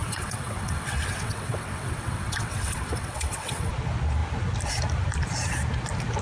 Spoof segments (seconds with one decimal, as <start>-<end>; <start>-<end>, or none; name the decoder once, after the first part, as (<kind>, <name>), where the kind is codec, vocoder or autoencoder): 0.0-3.7 (vocoder, WaveNeXt)